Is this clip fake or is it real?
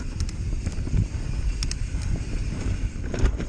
real